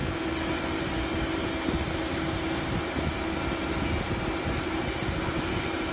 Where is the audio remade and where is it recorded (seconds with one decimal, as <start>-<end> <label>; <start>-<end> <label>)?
0.0-5.9 recorded